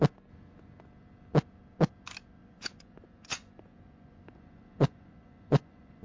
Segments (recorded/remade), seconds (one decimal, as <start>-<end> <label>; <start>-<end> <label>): 0.0-2.4 recorded; 2.4-6.0 remade